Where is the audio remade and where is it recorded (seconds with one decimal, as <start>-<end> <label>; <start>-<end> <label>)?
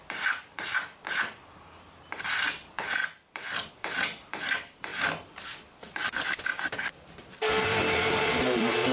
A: 0.0-6.5 remade; 6.5-7.5 recorded; 7.5-8.9 remade